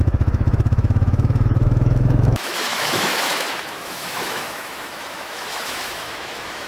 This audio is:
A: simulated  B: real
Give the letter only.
A